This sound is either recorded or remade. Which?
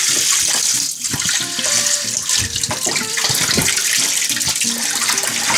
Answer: recorded